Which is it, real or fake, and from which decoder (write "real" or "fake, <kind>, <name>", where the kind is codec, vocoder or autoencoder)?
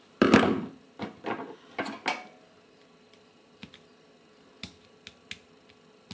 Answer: real